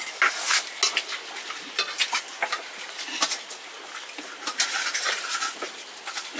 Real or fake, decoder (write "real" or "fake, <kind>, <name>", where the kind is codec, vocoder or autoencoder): real